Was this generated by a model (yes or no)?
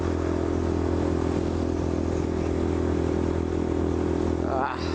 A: no